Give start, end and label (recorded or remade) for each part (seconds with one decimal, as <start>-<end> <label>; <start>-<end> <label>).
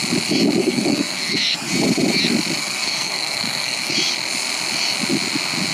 0.0-0.6 recorded; 0.6-1.6 remade; 1.6-2.6 recorded; 2.6-3.9 remade; 3.9-5.7 recorded